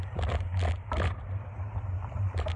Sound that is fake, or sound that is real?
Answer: real